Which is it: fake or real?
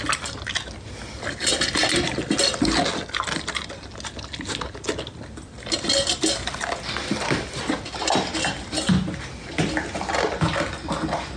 real